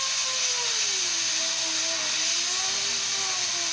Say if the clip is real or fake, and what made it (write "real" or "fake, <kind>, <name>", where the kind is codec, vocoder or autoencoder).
real